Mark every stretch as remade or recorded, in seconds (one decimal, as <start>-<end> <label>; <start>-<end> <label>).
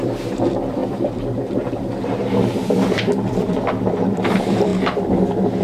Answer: 0.0-4.7 remade; 4.7-5.6 recorded